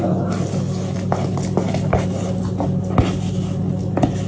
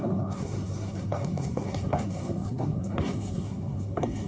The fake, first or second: second